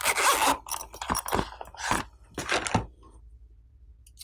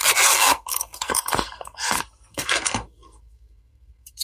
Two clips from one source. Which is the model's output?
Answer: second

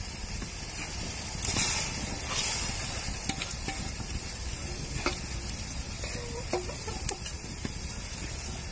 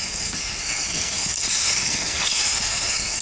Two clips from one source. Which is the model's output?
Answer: second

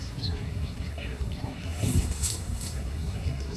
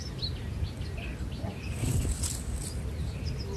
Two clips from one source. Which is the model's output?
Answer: first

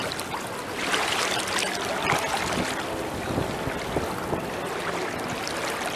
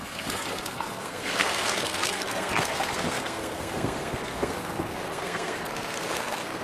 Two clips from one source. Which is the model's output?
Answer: second